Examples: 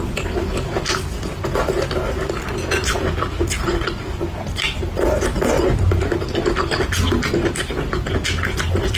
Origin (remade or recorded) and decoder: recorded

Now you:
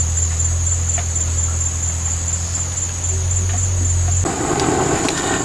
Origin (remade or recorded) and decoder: recorded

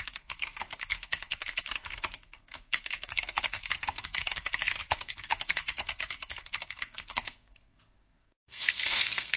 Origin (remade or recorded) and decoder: remade, codec, SNAC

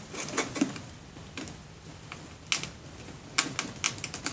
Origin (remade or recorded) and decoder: recorded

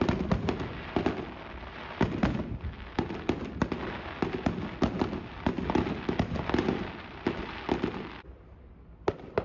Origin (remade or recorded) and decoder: recorded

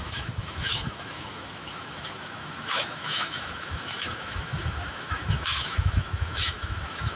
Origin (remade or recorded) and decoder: remade, autoencoder, DAC-VAE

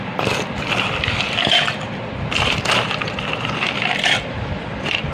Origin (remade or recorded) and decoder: remade, vocoder, BigVGAN v2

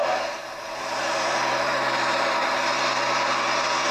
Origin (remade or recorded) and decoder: remade, vocoder, BigVGAN v2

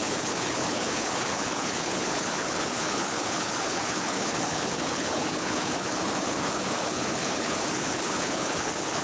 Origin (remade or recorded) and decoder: remade, codec, HILCodec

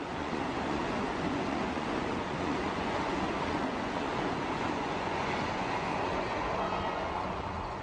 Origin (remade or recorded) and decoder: remade, vocoder, Vocos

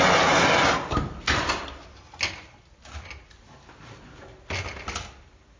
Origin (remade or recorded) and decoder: recorded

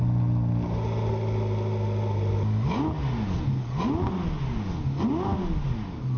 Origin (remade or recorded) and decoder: recorded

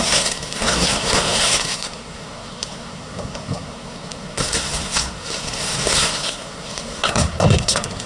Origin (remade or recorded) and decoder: remade, codec, SNAC